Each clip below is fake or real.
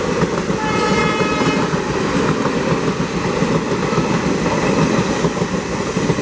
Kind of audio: real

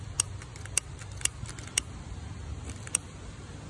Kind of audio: fake